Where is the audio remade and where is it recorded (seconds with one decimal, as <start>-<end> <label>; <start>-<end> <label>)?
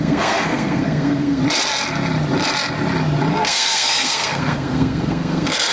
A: 0.0-1.4 remade; 1.4-3.3 recorded; 3.3-5.7 remade